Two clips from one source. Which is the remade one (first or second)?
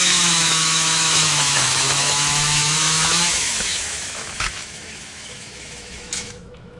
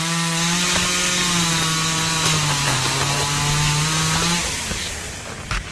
first